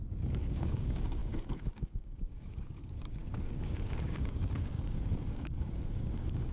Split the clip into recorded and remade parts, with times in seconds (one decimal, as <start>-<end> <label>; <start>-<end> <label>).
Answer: 0.0-6.5 remade